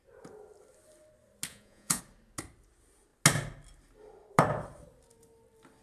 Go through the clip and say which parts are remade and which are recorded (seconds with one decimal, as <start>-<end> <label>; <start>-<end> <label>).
0.0-1.5 recorded; 1.5-2.0 remade; 2.0-5.8 recorded